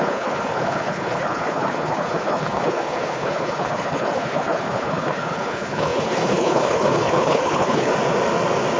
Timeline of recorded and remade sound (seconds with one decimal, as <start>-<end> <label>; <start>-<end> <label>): 0.0-7.9 remade; 7.9-8.8 recorded

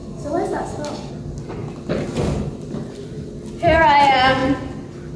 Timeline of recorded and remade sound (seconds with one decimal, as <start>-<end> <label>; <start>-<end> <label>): 0.0-1.1 remade; 1.1-5.2 recorded